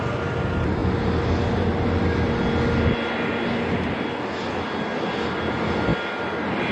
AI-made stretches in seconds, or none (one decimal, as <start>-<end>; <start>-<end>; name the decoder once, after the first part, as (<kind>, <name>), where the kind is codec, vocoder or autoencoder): none